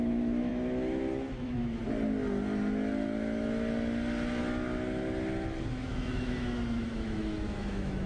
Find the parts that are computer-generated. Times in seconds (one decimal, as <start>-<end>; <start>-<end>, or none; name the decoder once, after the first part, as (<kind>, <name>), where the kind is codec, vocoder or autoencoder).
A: 0.0-0.5 (autoencoder, DAC-VAE); 1.4-1.8; 5.8-8.1